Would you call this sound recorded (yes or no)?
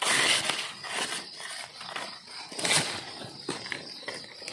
yes